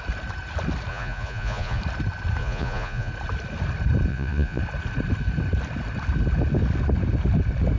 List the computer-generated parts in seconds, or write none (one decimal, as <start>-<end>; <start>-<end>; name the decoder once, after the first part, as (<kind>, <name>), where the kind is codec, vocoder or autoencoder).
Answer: 0.9-1.8 (vocoder, Vocos); 2.4-3.1; 4.1-4.6